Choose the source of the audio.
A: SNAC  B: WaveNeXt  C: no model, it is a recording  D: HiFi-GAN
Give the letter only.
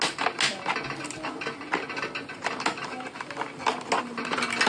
C